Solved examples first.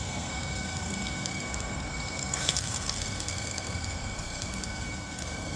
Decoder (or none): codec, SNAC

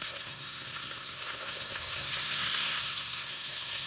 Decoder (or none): codec, SNAC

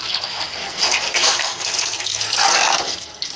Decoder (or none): codec, SNAC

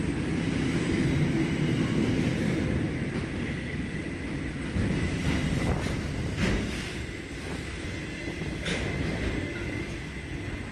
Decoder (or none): none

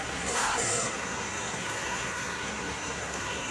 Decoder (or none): codec, SNAC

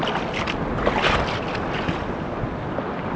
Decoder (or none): none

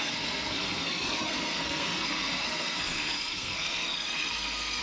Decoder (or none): codec, SNAC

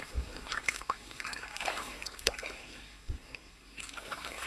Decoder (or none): codec, SNAC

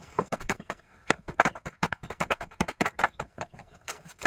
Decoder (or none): codec, SNAC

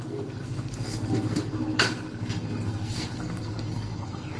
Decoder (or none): codec, SNAC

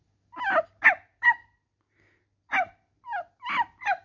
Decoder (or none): none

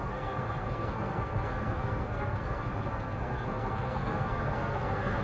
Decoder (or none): codec, SNAC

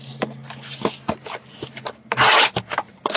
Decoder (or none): none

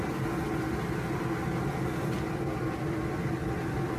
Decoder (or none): none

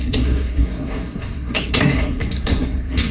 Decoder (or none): codec, SNAC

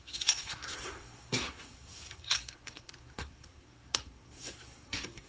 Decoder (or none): codec, SNAC